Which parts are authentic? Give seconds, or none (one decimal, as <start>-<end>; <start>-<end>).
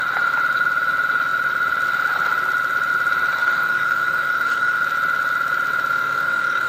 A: 0.0-3.4; 4.8-5.9